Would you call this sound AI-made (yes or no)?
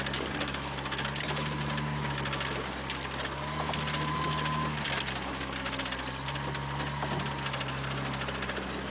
no